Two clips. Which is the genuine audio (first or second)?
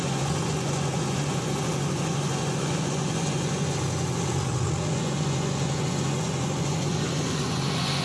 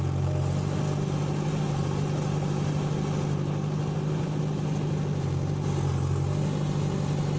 second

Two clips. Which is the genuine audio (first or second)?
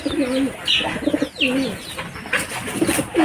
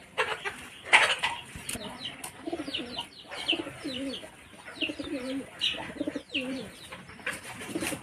first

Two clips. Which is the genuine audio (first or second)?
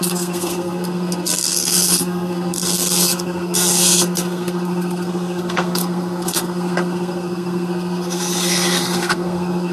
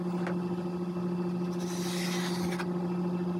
second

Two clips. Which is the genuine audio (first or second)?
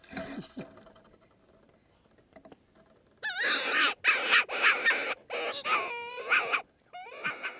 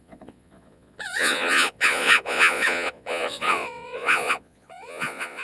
first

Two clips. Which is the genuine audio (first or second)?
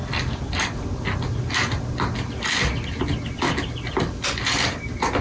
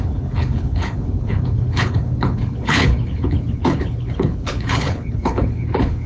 first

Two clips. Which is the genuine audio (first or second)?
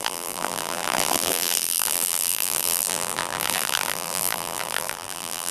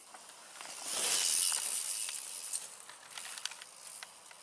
second